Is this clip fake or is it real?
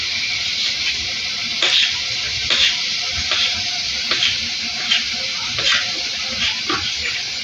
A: fake